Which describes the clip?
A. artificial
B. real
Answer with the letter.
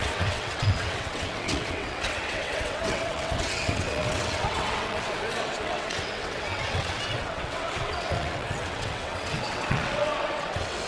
A